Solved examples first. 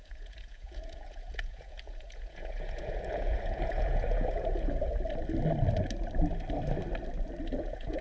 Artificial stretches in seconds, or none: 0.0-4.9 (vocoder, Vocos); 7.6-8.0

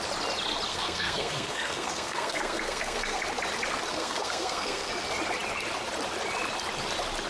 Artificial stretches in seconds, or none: 0.7-3.2 (codec, SNAC); 3.9-4.9

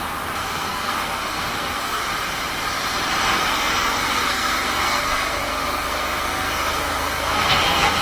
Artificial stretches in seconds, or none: 0.4-2.0 (codec, SNAC); 3.3-8.0